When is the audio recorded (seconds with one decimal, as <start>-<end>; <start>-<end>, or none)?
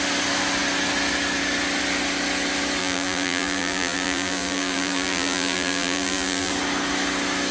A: 0.0-2.8; 6.5-7.5